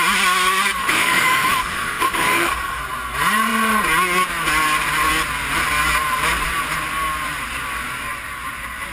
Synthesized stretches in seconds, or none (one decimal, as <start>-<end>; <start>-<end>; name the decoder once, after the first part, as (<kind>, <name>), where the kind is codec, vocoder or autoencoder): 0.8-2.8 (autoencoder, DAC-VAE)